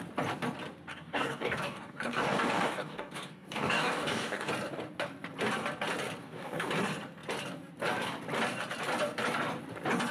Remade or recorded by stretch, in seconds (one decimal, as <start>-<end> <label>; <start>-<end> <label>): 0.0-0.9 recorded; 0.9-4.5 remade; 4.5-6.2 recorded; 6.2-6.7 remade; 6.7-10.1 recorded